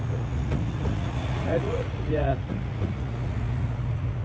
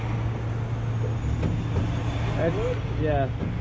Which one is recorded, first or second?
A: second